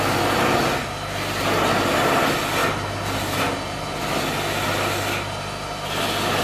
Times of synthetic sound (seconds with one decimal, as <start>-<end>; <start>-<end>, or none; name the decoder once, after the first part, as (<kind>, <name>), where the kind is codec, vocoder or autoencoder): none